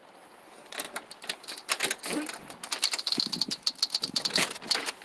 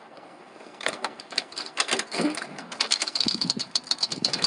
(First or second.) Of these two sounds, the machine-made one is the second